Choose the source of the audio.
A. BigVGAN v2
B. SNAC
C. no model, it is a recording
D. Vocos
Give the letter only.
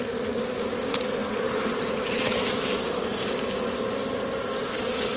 C